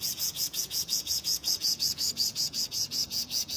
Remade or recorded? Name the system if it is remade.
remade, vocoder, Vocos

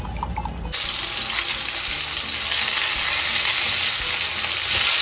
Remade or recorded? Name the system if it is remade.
recorded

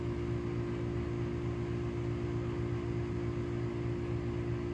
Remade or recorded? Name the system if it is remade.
recorded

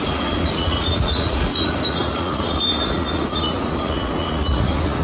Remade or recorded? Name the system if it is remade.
remade, vocoder, Vocos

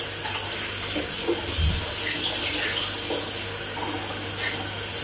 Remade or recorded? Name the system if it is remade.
recorded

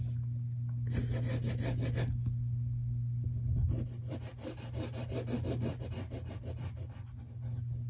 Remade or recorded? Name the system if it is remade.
recorded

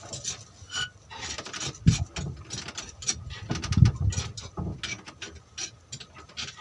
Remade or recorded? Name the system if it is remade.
recorded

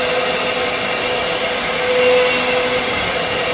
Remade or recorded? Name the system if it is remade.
recorded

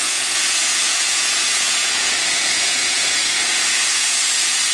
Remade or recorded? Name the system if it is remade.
remade, vocoder, Vocos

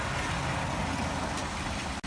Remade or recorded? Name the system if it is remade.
recorded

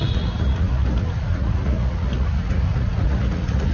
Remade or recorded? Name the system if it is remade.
remade, vocoder, Vocos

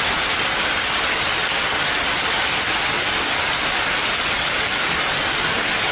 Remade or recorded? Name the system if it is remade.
recorded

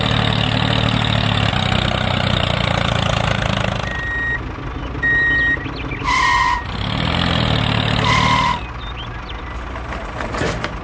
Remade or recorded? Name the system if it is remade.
recorded